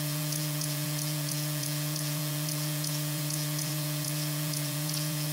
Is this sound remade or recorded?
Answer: remade